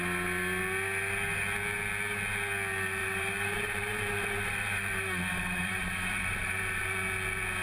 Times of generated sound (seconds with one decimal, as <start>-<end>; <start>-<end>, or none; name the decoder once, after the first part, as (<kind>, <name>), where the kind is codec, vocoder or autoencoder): 3.0-6.8 (vocoder, BigVGAN v2)